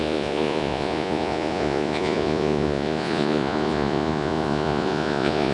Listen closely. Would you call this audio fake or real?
fake